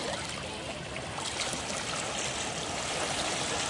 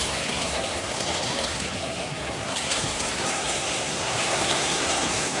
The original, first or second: first